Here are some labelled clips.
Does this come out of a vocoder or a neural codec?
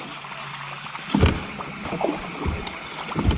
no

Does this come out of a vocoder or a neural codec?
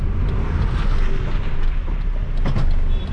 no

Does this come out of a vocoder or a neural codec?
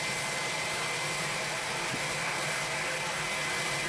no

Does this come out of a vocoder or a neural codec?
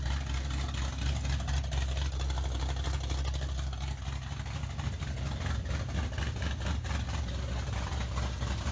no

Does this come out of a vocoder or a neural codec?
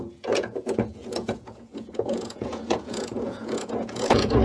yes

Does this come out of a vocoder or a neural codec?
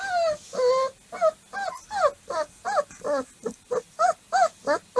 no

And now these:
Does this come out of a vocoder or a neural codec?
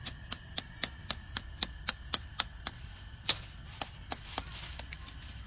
no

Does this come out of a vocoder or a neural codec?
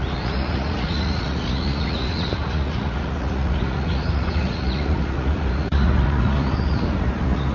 yes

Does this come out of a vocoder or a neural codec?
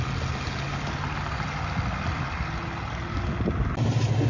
no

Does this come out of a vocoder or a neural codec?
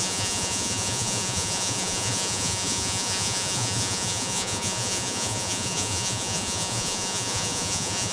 yes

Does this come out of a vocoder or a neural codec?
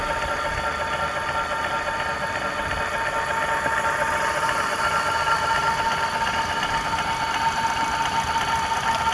no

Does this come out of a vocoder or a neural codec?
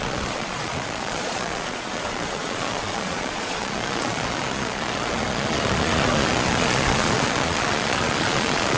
yes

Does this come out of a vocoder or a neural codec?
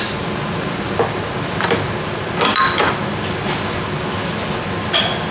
no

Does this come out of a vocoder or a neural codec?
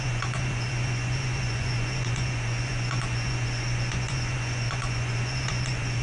yes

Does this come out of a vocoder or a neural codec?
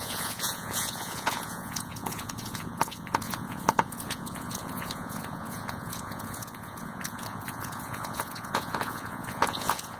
yes